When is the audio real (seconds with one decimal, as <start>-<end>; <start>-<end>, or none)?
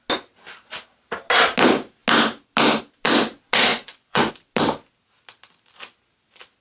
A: 0.0-3.7; 4.3-6.6